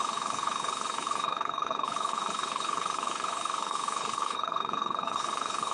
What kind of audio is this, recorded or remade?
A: remade